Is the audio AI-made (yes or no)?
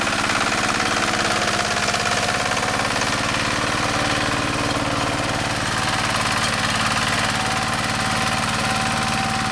no